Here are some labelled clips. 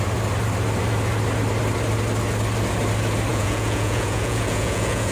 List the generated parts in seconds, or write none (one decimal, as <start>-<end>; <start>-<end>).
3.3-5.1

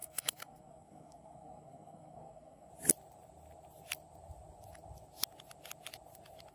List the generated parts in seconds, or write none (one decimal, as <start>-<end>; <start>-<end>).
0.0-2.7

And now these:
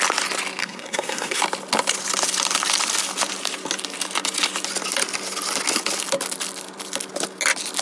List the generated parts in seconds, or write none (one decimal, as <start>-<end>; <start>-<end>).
0.6-1.4

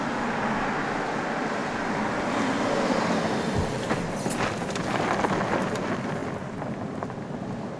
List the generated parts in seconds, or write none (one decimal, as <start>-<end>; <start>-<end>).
1.6-2.4

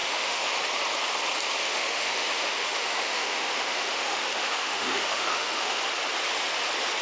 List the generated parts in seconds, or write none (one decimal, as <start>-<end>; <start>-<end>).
0.0-0.5; 1.6-5.8

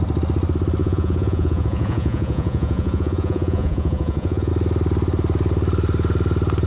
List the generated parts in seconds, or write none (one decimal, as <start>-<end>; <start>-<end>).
0.8-4.5

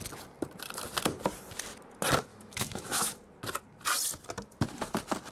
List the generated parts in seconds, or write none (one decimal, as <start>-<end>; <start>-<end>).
2.3-3.1

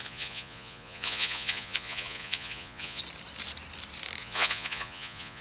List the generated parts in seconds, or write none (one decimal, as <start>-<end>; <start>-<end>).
0.0-3.0; 4.2-5.4